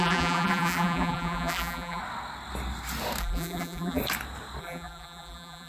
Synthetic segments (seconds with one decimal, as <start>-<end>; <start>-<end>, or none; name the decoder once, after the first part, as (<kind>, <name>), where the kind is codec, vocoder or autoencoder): 0.0-2.0 (vocoder, BigVGAN v2); 3.2-4.0; 4.6-5.7